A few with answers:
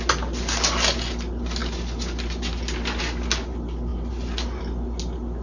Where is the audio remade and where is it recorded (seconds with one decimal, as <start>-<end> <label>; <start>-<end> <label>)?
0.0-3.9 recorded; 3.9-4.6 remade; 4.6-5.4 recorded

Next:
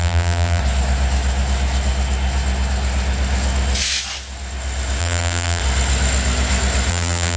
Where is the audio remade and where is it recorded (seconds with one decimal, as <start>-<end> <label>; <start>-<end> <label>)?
0.0-0.6 remade; 0.6-5.0 recorded; 5.0-5.6 remade; 5.6-6.9 recorded; 6.9-7.4 remade

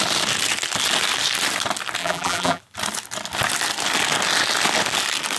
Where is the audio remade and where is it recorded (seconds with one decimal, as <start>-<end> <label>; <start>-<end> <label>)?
0.0-2.0 recorded; 2.0-2.6 remade; 2.6-5.4 recorded

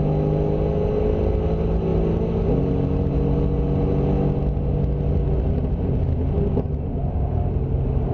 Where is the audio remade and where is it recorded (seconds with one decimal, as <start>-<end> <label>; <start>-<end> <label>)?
0.0-8.1 recorded

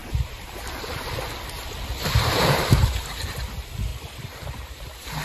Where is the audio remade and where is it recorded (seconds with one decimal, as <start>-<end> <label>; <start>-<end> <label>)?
0.0-2.8 remade; 2.8-3.9 recorded; 3.9-4.8 remade; 4.8-5.2 recorded

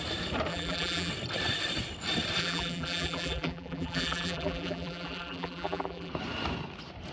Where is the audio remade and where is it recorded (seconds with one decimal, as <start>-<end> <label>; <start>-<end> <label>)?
0.0-0.5 recorded; 0.5-1.1 remade; 1.1-2.4 recorded; 2.4-6.1 remade; 6.1-7.1 recorded